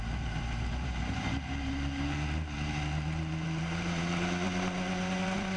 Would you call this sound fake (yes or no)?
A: yes